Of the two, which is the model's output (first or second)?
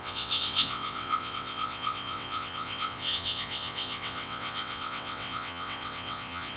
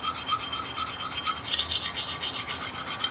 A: first